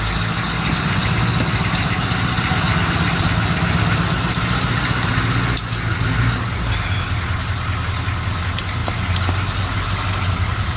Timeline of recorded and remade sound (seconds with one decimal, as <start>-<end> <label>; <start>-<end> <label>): 0.0-10.8 recorded